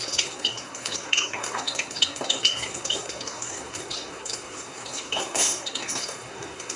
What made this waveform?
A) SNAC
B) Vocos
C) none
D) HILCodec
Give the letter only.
A